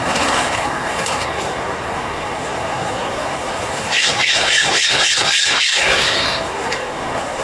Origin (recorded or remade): remade